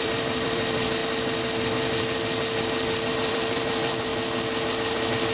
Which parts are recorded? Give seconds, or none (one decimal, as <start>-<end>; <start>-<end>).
1.0-3.1; 4.1-4.7